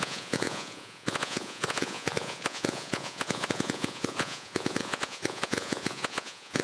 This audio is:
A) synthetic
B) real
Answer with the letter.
A